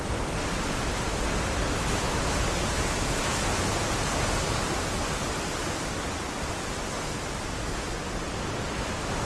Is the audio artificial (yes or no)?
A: no